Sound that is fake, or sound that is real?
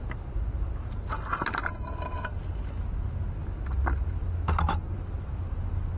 real